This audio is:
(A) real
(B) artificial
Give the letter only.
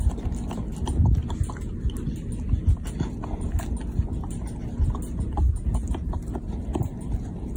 A